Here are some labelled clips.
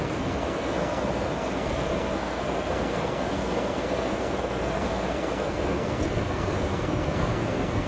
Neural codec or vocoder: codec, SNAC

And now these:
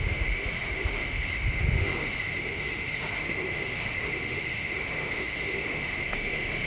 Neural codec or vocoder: autoencoder, DAC-VAE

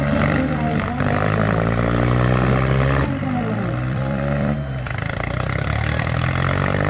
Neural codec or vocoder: vocoder, BigVGAN v2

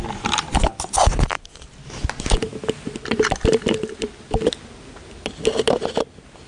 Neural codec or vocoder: none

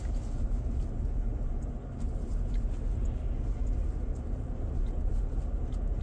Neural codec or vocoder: none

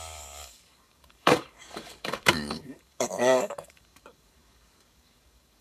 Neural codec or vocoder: codec, DAC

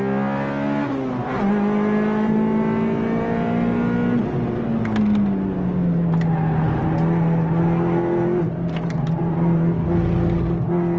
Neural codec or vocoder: none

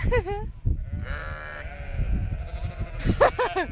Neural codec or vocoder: none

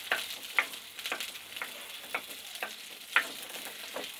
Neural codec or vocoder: none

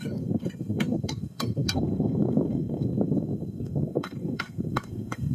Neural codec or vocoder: codec, SNAC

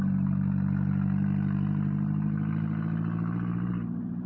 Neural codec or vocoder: none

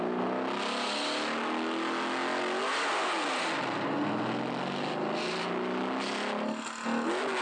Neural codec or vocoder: none